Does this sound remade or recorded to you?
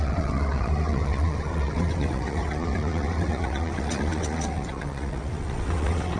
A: remade